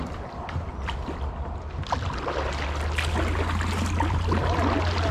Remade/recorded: recorded